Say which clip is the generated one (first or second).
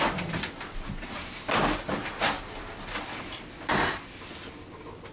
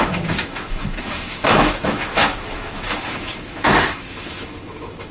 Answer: second